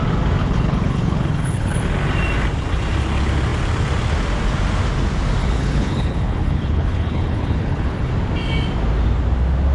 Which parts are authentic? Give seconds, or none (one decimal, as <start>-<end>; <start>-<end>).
0.0-0.4; 1.8-5.4; 8.1-9.7